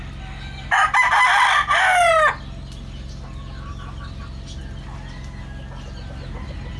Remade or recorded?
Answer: recorded